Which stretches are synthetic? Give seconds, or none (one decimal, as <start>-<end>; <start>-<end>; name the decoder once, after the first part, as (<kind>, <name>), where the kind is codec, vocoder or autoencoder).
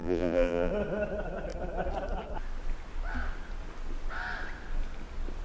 0.0-0.7 (vocoder, BigVGAN v2)